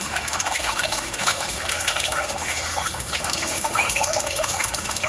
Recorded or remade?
remade